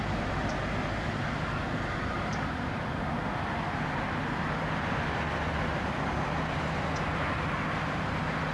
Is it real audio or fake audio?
real